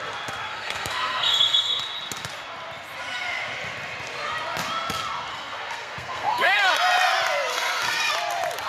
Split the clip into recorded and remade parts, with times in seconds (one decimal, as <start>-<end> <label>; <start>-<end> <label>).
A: 0.0-0.4 recorded; 0.4-1.8 remade; 1.8-5.3 recorded; 5.3-6.7 remade; 6.7-7.5 recorded; 7.5-8.1 remade; 8.1-8.7 recorded